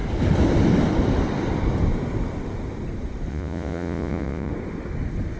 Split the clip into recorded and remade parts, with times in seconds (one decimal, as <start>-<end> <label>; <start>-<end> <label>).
0.0-3.3 recorded; 3.3-4.5 remade; 4.5-5.4 recorded